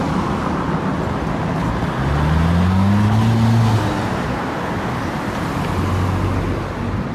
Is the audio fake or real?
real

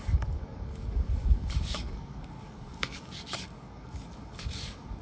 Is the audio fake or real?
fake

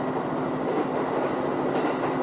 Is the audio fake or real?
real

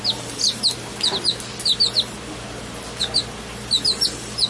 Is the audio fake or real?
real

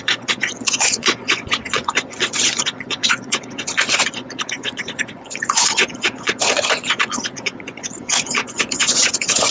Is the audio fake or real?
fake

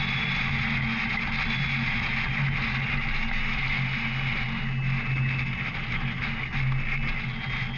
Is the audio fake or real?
real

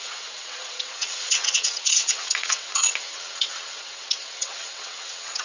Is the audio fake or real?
fake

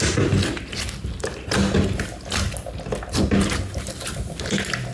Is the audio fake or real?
real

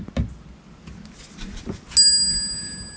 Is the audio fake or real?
real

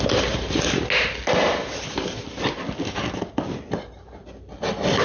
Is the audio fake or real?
real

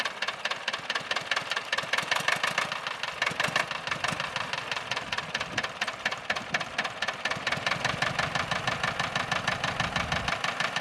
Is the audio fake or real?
real